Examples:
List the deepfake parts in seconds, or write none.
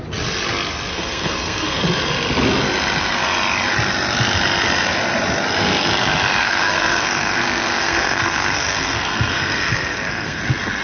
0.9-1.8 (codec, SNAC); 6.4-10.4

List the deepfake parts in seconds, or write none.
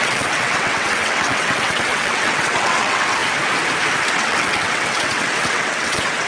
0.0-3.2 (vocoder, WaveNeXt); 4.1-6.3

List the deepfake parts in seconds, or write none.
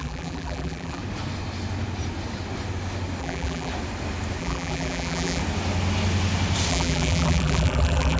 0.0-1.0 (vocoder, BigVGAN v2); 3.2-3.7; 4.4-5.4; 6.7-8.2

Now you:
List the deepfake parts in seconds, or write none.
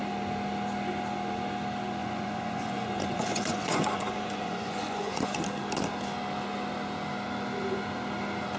2.0-5.4 (vocoder, Vocos)